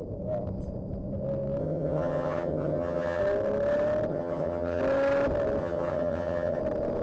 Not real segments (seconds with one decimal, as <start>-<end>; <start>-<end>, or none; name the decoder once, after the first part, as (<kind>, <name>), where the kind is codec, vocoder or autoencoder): 1.6-3.2 (vocoder, HiFi-GAN); 4.1-4.8; 5.6-6.6